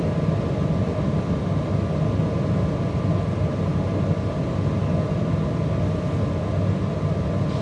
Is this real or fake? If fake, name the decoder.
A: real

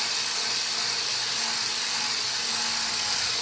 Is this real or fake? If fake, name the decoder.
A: real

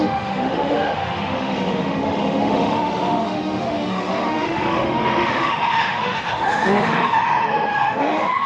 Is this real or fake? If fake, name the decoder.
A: fake, autoencoder, DAC-VAE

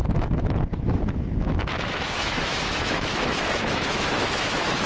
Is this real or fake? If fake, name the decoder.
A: fake, autoencoder, DAC-VAE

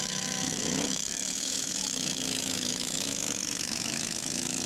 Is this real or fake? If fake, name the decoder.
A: fake, autoencoder, DAC-VAE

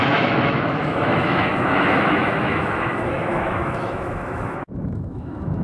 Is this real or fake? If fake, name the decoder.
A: fake, autoencoder, DAC-VAE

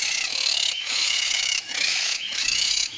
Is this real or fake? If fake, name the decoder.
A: fake, autoencoder, DAC-VAE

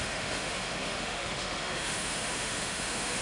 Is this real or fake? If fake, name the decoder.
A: fake, autoencoder, DAC-VAE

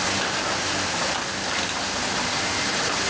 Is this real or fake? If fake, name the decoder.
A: real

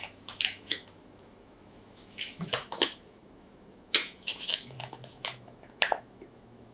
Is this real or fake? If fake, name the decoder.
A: fake, autoencoder, DAC-VAE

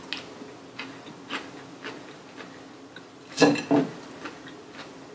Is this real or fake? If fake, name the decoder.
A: real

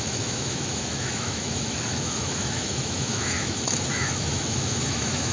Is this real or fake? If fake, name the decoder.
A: fake, autoencoder, DAC-VAE